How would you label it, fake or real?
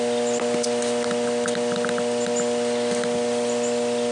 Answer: real